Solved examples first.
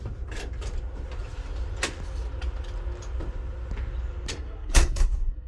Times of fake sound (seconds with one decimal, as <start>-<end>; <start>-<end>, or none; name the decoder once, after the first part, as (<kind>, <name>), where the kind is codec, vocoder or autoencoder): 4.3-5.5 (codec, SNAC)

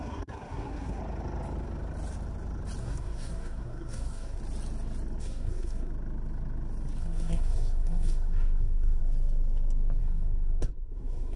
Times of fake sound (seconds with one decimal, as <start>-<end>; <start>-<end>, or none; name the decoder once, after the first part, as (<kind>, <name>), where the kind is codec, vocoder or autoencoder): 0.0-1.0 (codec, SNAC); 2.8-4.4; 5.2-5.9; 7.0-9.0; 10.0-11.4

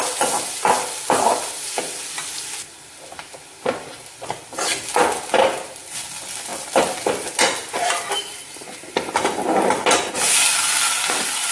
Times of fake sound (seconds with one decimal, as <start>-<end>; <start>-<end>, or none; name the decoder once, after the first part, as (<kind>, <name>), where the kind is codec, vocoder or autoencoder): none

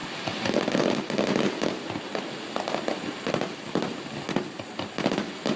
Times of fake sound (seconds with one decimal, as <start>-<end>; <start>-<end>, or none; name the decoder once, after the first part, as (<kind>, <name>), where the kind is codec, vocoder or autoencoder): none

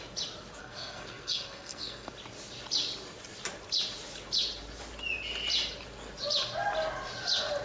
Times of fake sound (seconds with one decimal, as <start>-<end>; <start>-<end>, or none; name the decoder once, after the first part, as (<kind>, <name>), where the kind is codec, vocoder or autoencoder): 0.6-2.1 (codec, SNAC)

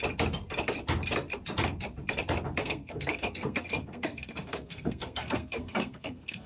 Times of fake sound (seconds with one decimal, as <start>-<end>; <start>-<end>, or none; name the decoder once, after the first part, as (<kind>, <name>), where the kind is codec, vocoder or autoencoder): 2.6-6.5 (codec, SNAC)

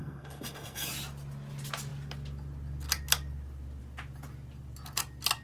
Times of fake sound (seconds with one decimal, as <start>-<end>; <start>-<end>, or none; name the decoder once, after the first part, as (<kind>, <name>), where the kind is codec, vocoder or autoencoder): 0.0-0.9 (codec, SNAC)